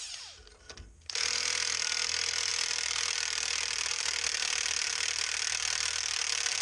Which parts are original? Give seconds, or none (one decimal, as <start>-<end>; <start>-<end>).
0.0-4.9; 6.0-6.6